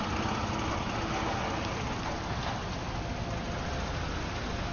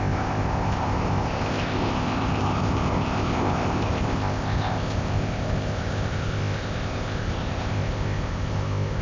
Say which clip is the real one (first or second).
first